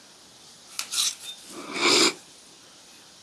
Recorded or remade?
recorded